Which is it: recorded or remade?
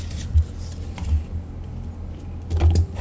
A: recorded